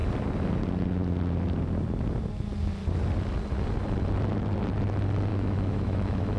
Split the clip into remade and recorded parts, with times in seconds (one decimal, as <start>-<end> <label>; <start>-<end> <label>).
0.0-5.3 recorded; 5.3-6.4 remade